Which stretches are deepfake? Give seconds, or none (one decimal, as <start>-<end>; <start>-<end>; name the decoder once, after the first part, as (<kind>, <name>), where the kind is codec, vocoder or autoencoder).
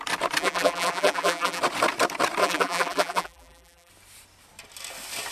0.4-1.6 (vocoder, BigVGAN v2); 2.4-3.9